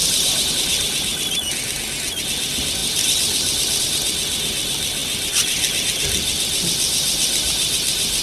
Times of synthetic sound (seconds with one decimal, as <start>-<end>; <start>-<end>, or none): 0.0-0.5; 1.1-1.8